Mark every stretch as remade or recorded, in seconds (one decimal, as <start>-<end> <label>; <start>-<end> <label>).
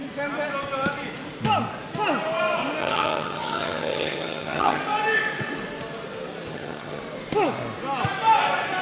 0.0-2.8 recorded; 2.8-4.8 remade; 4.8-6.5 recorded; 6.5-7.0 remade; 7.0-8.8 recorded